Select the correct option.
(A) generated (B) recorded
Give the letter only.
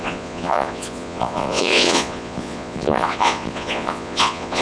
A